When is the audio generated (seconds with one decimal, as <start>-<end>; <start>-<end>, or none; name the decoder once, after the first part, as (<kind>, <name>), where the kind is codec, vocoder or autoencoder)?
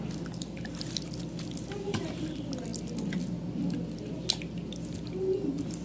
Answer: none